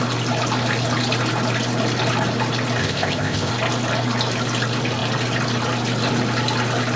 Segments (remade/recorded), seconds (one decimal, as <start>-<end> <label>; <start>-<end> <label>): 0.0-2.8 recorded; 2.8-3.5 remade; 3.5-7.0 recorded